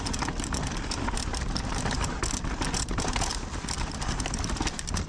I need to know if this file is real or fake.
real